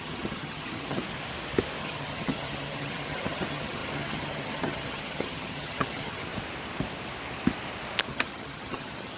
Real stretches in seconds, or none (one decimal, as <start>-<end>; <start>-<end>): 1.0-1.8; 6.3-8.1